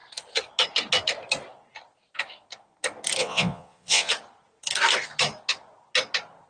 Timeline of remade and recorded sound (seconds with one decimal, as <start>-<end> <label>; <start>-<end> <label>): 0.0-3.2 recorded; 3.2-4.1 remade; 4.1-6.5 recorded